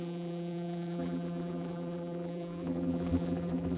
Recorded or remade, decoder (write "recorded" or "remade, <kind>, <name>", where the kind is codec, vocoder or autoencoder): remade, vocoder, BigVGAN v2